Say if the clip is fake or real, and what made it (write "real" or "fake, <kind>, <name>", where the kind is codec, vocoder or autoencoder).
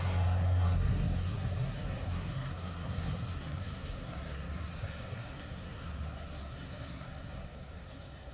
fake, codec, SNAC